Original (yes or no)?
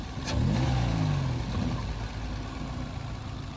yes